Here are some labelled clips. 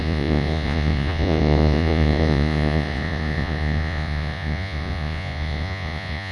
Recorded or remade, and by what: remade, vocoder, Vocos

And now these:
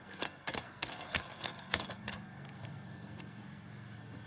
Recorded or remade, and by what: remade, codec, SNAC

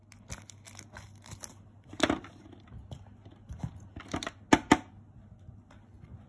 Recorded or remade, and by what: recorded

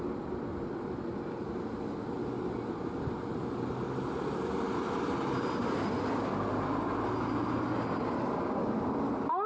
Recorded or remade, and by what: recorded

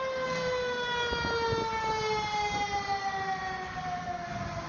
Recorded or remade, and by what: recorded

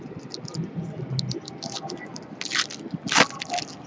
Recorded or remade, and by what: recorded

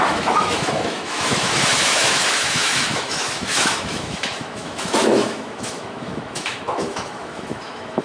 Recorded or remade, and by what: remade, autoencoder, DAC-VAE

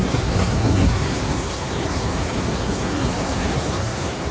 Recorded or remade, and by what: remade, codec, SNAC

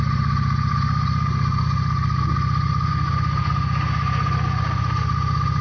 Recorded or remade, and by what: recorded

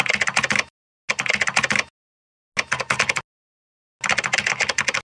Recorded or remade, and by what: recorded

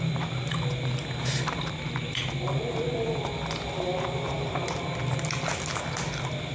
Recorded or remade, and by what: recorded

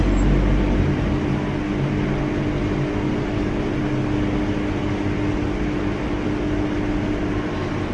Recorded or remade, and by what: recorded